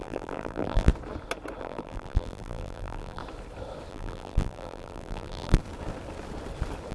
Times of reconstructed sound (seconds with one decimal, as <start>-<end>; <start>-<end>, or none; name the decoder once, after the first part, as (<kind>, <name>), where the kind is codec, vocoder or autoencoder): 0.0-0.9 (vocoder, BigVGAN v2); 1.6-3.2; 3.9-5.6